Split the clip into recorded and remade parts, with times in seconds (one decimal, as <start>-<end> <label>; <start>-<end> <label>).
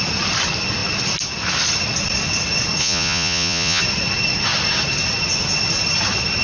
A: 0.0-2.8 recorded; 2.8-3.8 remade; 3.8-6.4 recorded